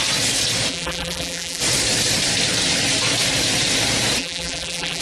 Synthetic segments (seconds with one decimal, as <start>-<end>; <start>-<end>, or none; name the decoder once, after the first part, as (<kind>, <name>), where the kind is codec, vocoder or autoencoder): 0.7-1.6 (vocoder, BigVGAN v2); 4.2-5.0